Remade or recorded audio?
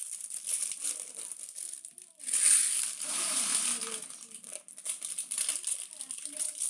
recorded